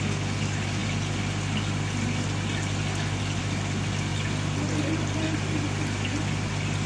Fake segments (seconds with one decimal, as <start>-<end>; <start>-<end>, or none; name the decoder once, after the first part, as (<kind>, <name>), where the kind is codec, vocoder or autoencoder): none